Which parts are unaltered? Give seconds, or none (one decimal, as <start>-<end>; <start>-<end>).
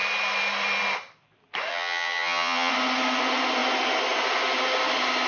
0.0-1.7; 2.7-5.3